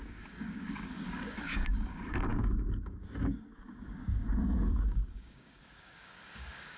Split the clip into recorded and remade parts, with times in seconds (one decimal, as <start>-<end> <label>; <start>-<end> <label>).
0.0-6.8 remade